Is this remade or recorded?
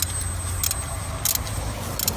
recorded